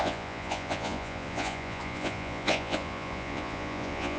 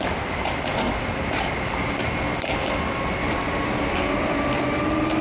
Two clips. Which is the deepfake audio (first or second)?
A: first